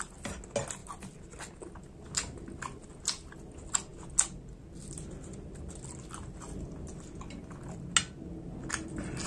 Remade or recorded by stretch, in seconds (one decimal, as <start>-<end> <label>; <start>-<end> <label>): 0.0-9.3 recorded